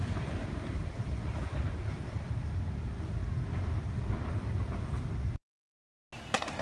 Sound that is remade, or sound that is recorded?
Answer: recorded